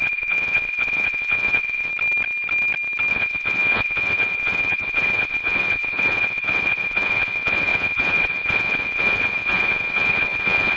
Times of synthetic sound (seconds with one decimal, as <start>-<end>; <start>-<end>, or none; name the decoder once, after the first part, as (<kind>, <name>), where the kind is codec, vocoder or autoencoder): 0.0-1.9 (vocoder, Vocos); 3.1-10.8